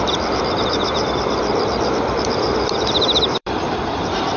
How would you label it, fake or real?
fake